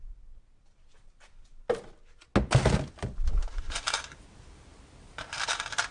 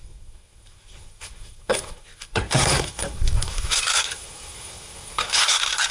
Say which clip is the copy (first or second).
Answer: second